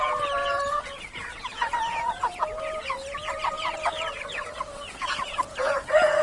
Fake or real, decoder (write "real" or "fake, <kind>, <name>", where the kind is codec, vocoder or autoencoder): fake, vocoder, Vocos